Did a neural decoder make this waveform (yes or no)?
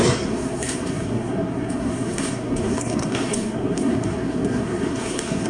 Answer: yes